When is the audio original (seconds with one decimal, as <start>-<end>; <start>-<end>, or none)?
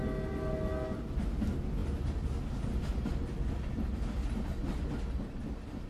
0.0-5.9